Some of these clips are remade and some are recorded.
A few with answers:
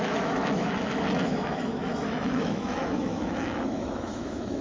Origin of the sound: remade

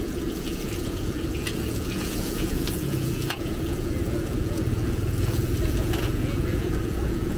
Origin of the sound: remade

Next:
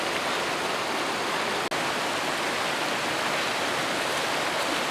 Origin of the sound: recorded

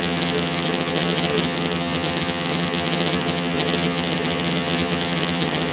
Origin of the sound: remade